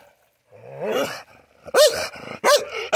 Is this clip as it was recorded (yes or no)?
yes